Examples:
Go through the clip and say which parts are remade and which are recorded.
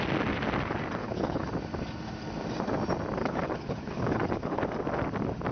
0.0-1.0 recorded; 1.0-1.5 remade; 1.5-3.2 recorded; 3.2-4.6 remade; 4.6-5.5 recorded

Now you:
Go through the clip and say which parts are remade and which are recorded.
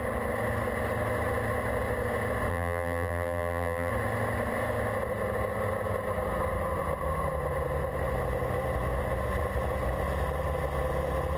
0.0-2.5 recorded; 2.5-3.9 remade; 3.9-11.4 recorded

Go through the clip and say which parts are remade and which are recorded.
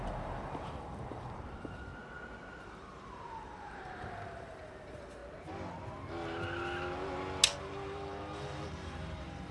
0.0-1.9 remade; 1.9-2.6 recorded; 2.6-5.2 remade; 5.2-7.6 recorded; 7.6-9.5 remade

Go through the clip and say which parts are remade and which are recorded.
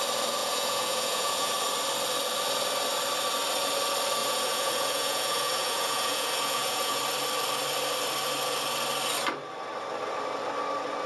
0.0-0.4 recorded; 0.4-1.5 remade; 1.5-4.2 recorded; 4.2-7.0 remade; 7.0-11.1 recorded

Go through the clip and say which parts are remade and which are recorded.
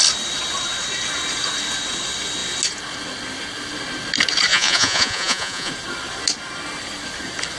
0.0-4.5 recorded; 4.5-5.7 remade; 5.7-7.6 recorded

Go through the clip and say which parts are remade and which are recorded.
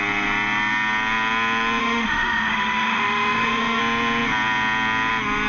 0.0-1.8 recorded; 1.8-3.8 remade; 3.8-5.5 recorded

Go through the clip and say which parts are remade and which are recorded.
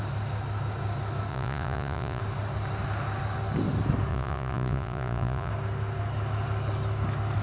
0.0-1.3 recorded; 1.3-2.2 remade; 2.2-4.1 recorded; 4.1-5.5 remade; 5.5-7.4 recorded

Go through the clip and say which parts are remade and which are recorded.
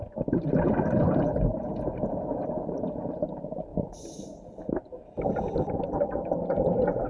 0.0-7.1 recorded